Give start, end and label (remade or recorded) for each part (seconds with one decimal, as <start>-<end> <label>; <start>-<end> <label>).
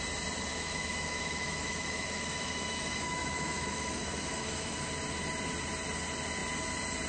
0.0-0.5 recorded; 0.5-4.8 remade; 4.8-7.1 recorded